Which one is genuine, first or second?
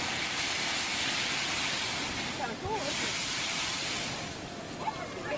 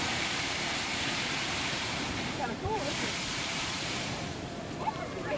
first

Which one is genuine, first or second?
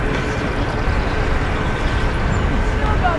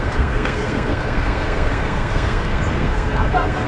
first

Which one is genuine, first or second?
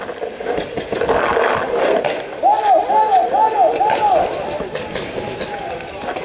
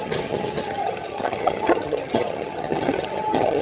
first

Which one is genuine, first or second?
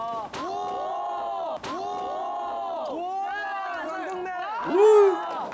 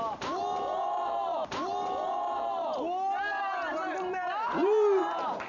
first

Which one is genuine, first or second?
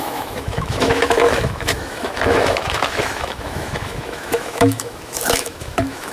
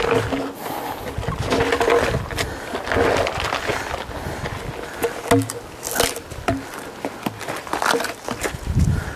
second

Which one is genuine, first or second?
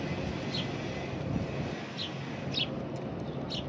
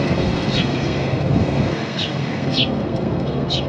first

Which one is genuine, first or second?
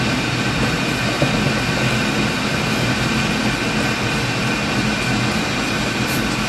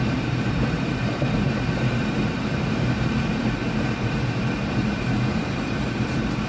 first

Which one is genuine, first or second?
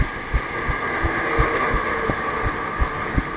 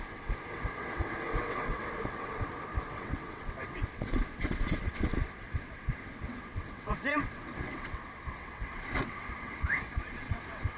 first